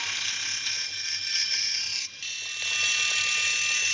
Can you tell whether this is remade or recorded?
recorded